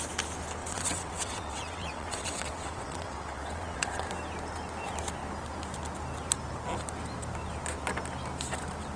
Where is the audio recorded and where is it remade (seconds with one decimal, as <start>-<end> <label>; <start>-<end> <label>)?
0.0-0.6 recorded; 0.6-4.0 remade; 4.0-9.0 recorded